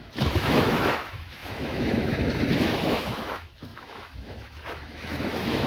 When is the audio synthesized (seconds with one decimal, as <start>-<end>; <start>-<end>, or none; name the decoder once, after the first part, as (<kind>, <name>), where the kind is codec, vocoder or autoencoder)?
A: 0.0-5.7 (autoencoder, DAC-VAE)